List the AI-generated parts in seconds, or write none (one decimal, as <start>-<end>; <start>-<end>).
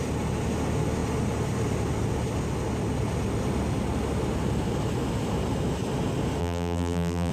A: 6.4-7.3